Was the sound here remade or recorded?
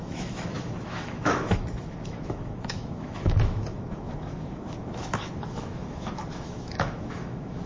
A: remade